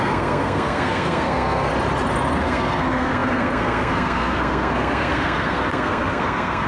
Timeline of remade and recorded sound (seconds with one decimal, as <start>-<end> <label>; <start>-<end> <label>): 0.0-1.7 remade; 1.7-2.3 recorded; 2.3-6.7 remade